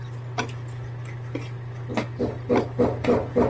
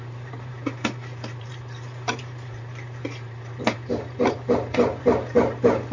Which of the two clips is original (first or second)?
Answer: first